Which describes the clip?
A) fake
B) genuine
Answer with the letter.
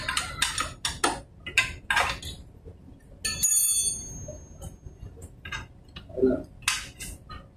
B